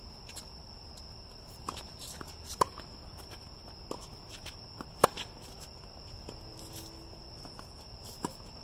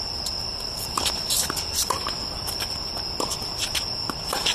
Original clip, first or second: first